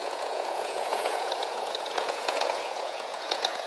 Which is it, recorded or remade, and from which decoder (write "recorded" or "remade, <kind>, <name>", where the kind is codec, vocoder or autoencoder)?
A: remade, vocoder, Vocos